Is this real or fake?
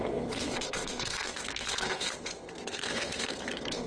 fake